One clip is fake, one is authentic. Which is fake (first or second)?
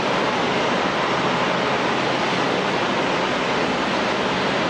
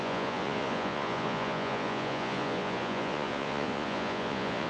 second